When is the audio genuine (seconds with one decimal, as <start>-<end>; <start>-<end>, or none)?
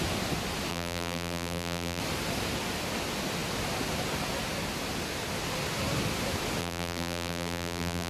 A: 0.0-0.7; 2.0-6.6